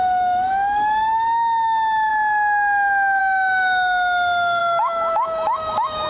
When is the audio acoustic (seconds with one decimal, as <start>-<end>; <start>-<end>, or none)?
2.1-3.2